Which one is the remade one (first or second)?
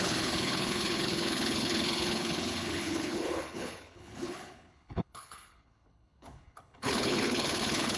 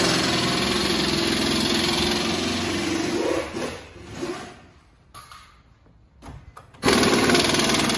first